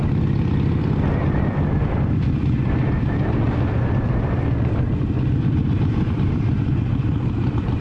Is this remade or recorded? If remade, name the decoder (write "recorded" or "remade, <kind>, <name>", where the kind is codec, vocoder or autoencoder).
remade, vocoder, BigVGAN v2